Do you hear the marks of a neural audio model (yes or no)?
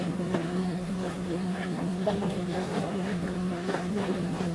yes